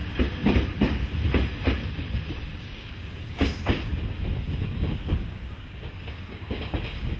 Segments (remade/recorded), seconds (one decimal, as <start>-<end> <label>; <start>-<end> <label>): 0.0-2.6 recorded; 2.6-3.9 remade; 3.9-4.5 recorded; 4.5-7.2 remade